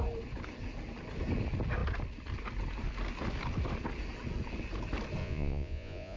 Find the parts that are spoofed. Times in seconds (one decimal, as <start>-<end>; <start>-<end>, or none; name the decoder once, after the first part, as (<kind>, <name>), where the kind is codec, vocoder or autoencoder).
5.2-6.2 (vocoder, Vocos)

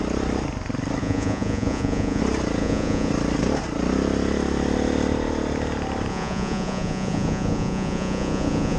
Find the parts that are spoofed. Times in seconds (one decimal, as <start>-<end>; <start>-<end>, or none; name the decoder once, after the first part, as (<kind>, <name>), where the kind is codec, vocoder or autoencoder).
1.0-2.2 (vocoder, Vocos); 2.6-3.1; 6.1-8.8

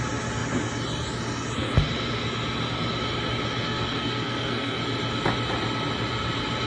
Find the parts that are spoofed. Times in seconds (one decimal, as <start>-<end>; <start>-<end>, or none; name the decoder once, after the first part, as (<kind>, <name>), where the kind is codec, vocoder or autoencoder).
3.6-4.8 (codec, SNAC)

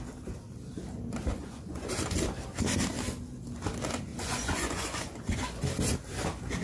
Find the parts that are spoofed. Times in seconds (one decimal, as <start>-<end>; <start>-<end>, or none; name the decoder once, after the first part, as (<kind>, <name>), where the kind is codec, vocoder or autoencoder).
1.3-1.9 (vocoder, Vocos); 4.1-5.6

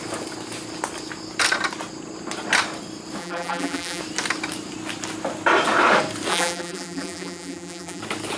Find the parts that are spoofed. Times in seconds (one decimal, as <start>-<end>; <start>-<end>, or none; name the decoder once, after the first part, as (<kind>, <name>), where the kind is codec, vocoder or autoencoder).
3.2-4.0 (vocoder, BigVGAN v2); 6.3-8.0

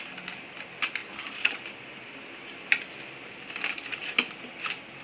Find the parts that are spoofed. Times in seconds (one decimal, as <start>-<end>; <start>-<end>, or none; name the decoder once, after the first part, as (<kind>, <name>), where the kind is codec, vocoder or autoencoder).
none

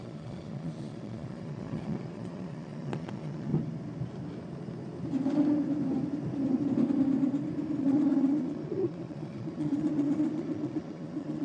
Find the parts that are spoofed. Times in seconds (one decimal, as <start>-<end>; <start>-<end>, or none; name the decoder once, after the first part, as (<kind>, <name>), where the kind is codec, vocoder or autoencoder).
0.0-3.5 (vocoder, Vocos); 7.8-11.4